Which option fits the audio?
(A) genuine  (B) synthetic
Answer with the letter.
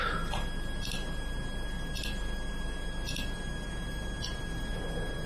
A